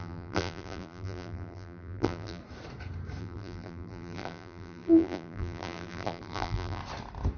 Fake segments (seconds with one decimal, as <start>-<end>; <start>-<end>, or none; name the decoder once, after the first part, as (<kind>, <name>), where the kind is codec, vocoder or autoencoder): 0.0-2.4 (vocoder, BigVGAN v2); 3.2-6.8